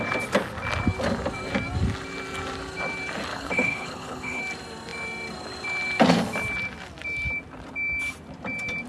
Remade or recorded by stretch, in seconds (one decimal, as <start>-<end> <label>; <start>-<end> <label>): 0.0-3.3 recorded; 3.3-4.4 remade; 4.4-8.9 recorded